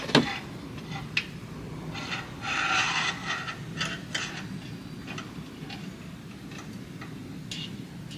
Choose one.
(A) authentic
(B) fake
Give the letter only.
A